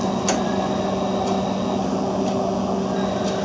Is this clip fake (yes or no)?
no